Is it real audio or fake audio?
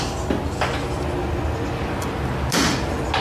real